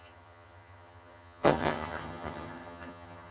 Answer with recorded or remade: remade